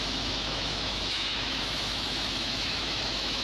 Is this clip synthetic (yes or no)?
yes